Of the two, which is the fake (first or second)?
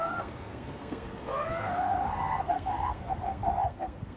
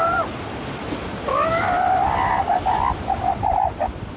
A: first